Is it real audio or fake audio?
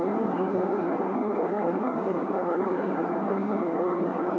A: fake